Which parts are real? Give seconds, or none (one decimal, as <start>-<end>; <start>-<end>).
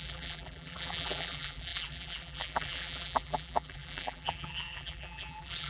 none